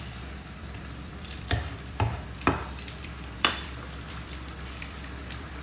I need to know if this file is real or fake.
fake